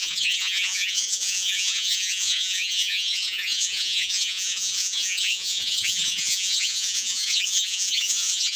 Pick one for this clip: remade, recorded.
remade